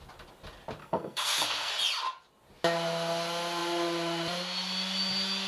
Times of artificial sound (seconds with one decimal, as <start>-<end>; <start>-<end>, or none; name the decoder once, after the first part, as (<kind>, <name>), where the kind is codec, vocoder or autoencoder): 0.8-1.7 (codec, SNAC)